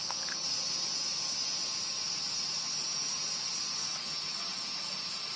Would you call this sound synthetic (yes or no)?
no